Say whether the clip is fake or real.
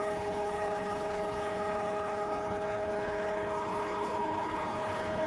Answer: fake